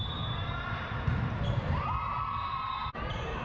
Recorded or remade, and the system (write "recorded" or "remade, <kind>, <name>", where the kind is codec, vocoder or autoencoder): recorded